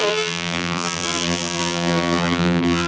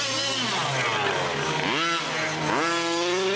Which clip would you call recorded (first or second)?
second